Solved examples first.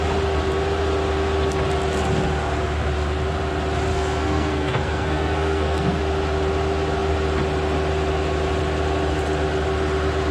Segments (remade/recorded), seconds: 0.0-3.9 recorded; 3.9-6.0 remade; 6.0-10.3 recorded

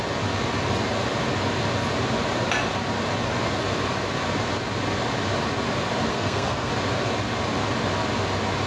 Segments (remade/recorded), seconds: 0.0-6.1 recorded; 6.1-6.7 remade; 6.7-8.7 recorded

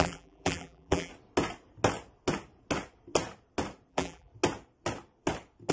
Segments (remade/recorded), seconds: 0.0-1.1 remade; 1.1-3.9 recorded; 3.9-4.3 remade; 4.3-5.7 recorded